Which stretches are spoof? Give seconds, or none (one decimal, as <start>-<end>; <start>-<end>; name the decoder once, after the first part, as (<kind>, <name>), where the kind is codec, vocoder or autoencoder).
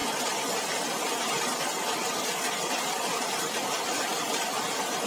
none